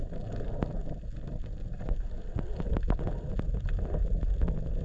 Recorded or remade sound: recorded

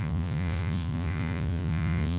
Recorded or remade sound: remade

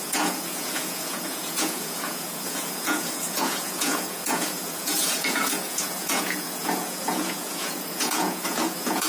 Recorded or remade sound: remade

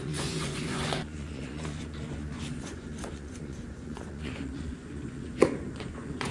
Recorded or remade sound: remade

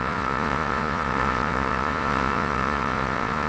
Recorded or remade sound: remade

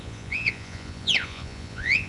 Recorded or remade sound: remade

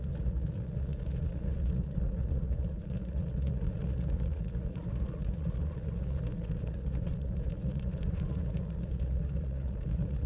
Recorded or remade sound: remade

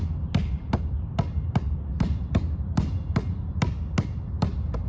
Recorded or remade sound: recorded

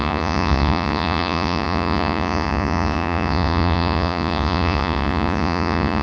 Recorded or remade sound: remade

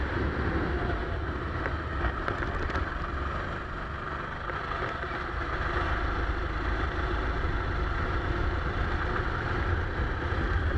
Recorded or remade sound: recorded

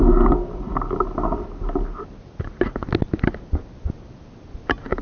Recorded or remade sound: recorded